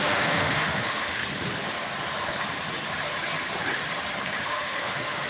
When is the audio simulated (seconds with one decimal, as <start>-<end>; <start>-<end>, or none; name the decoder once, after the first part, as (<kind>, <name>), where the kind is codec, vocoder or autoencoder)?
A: 0.0-1.2 (autoencoder, DAC-VAE); 4.4-5.3